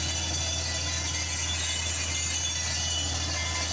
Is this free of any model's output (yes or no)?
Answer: yes